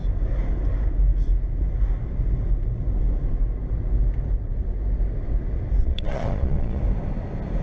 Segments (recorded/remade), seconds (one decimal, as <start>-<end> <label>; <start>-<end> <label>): 0.0-5.8 recorded; 5.8-6.8 remade; 6.8-7.6 recorded